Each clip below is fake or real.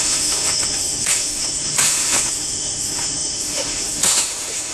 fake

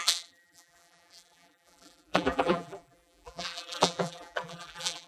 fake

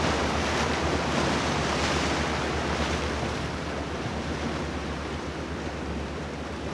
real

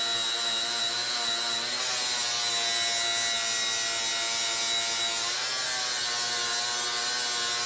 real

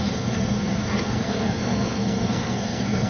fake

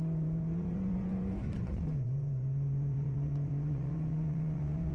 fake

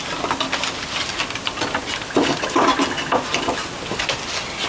real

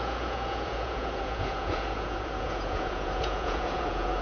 fake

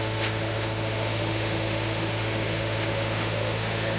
fake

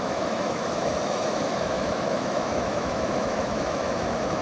fake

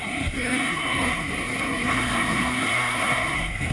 fake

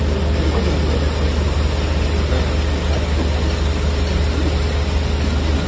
real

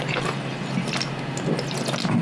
real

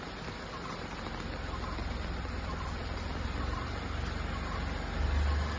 real